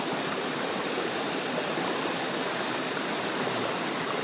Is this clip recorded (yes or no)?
yes